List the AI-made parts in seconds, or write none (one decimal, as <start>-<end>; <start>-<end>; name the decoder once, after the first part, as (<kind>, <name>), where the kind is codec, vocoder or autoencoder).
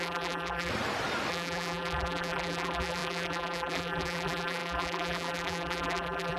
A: 0.0-0.7 (vocoder, BigVGAN v2); 1.3-6.4